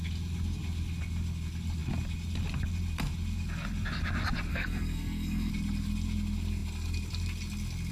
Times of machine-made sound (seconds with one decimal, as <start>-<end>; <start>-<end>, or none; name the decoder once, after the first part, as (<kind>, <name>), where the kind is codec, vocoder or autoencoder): 4.5-5.5 (codec, SNAC)